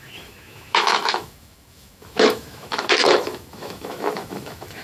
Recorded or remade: remade